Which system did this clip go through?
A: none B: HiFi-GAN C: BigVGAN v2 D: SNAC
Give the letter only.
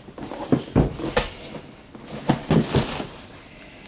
A